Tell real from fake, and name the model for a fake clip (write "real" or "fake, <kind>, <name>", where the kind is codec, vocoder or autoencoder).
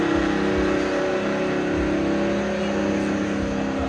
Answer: real